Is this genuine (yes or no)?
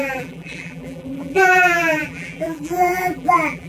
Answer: no